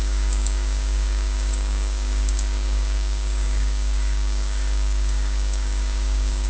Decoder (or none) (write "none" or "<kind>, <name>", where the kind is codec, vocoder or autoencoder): codec, DAC